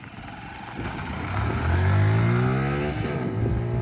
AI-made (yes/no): no